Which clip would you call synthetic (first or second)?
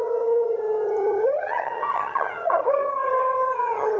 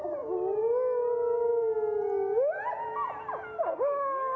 first